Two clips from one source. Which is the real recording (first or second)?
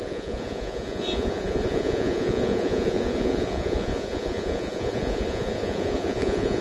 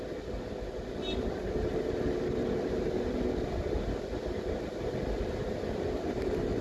second